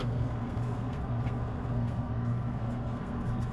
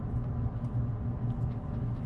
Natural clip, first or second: second